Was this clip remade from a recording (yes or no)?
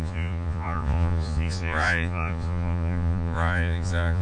yes